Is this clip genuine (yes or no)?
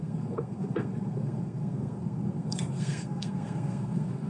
no